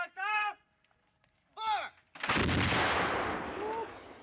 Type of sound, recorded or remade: recorded